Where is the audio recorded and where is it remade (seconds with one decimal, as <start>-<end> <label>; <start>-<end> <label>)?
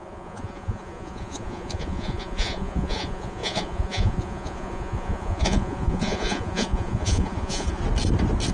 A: 0.0-7.8 remade; 7.8-8.5 recorded